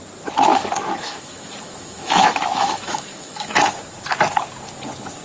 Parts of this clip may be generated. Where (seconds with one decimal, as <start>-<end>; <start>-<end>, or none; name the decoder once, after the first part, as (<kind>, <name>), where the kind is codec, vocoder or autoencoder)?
0.5-3.6 (autoencoder, DAC-VAE)